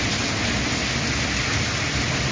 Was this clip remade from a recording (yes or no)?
no